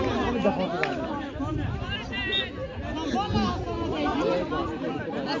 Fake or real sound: real